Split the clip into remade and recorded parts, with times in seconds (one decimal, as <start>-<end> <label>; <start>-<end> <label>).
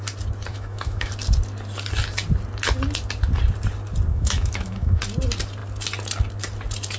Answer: 0.0-0.5 recorded; 0.5-1.1 remade; 1.1-4.1 recorded; 4.1-5.0 remade; 5.0-7.0 recorded